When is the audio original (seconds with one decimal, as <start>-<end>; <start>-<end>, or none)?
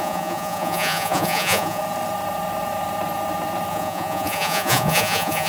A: 1.8-3.7